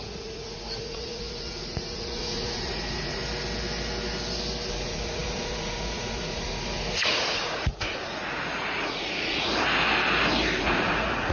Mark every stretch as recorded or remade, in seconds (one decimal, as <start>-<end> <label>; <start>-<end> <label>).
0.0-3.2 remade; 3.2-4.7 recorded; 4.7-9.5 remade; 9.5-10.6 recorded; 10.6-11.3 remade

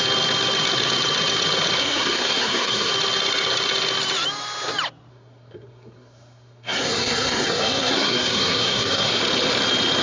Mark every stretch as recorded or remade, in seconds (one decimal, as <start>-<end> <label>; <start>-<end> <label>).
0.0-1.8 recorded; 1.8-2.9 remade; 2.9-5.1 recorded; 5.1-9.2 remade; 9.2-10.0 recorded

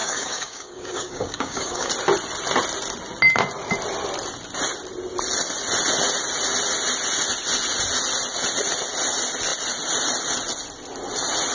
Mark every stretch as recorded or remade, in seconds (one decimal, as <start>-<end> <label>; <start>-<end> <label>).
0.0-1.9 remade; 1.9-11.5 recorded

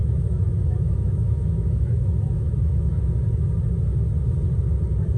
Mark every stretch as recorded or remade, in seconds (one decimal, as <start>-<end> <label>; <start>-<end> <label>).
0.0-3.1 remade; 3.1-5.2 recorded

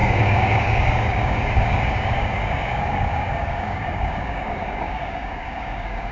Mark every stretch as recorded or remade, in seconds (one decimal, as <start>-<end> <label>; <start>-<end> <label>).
0.0-6.1 remade

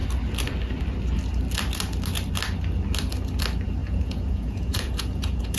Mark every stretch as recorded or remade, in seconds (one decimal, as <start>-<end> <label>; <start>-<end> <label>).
0.0-3.8 recorded; 3.8-5.6 remade

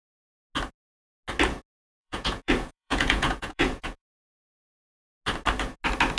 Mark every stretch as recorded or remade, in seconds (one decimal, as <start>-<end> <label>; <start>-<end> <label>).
0.0-1.9 recorded; 1.9-4.5 remade; 4.5-6.2 recorded

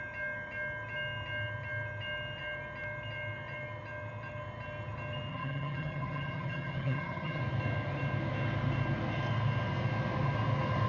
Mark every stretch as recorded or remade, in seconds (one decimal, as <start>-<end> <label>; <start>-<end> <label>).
0.0-5.3 recorded; 5.3-7.4 remade; 7.4-10.9 recorded